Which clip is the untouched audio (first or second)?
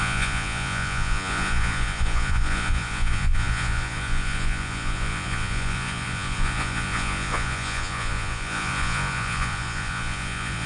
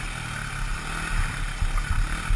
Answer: second